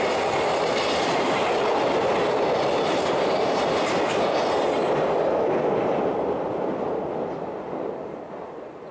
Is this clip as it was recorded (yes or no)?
yes